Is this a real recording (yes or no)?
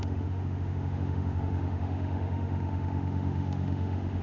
no